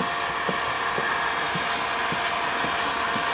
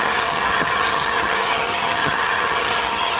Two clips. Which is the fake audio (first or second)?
second